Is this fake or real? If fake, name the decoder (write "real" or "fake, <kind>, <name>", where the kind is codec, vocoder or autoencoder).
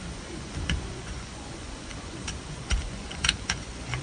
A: fake, vocoder, Vocos